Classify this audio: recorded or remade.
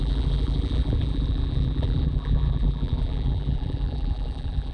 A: remade